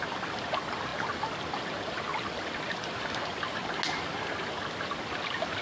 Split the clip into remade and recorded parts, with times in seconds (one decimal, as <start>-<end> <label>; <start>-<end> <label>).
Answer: 0.0-5.6 recorded